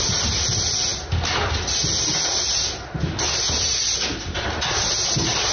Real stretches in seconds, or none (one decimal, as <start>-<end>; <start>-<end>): 0.0-5.5